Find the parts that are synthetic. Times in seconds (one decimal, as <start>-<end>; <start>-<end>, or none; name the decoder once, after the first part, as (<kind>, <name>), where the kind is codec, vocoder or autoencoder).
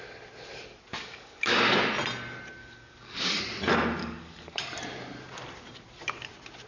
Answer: 0.9-1.8 (codec, DAC); 2.6-3.4; 4.0-4.6